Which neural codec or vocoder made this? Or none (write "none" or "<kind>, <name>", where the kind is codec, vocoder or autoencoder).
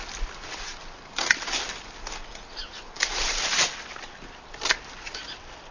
none